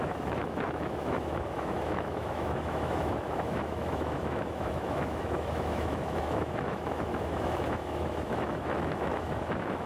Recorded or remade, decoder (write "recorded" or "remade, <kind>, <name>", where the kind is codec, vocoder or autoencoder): remade, autoencoder, DAC-VAE